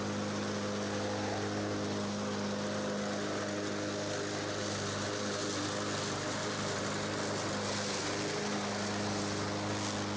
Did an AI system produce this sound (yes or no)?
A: no